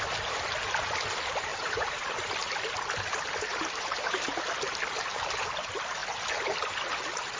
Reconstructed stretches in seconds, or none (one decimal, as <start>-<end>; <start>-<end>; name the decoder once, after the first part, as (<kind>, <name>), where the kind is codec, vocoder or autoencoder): 1.5-2.1 (vocoder, BigVGAN v2); 3.5-4.5